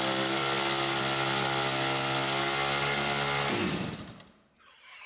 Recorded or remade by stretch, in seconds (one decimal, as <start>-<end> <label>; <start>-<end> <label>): 0.0-5.1 recorded